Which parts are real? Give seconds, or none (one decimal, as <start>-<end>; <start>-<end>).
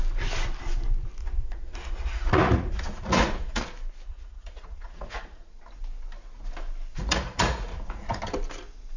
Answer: 0.0-1.2; 3.6-4.1; 5.5-6.9; 8.2-9.0